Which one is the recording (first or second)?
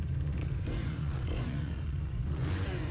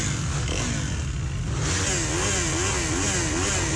second